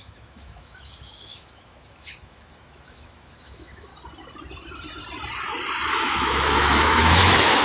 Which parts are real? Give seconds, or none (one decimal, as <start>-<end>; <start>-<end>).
3.9-5.9